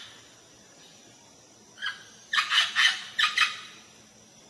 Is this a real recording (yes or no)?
yes